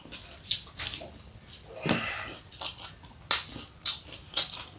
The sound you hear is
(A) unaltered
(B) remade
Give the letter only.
A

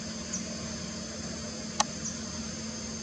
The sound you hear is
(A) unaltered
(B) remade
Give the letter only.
A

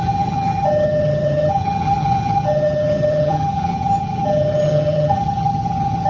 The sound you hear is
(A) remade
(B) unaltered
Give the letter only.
A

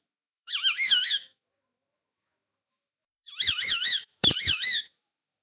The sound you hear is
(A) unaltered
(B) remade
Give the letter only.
B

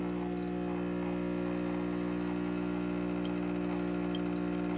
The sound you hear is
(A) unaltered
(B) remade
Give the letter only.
A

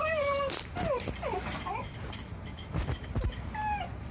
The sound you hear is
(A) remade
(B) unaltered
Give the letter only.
B